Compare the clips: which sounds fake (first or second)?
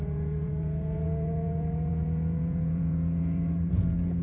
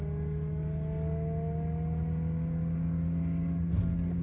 first